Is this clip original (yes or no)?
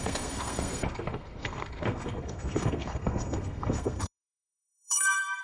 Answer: no